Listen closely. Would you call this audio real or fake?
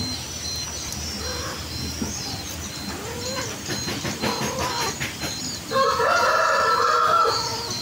real